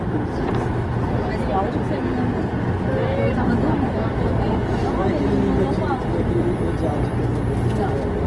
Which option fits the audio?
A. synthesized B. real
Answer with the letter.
B